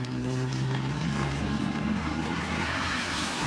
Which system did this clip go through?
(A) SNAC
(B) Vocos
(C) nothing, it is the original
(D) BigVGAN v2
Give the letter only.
A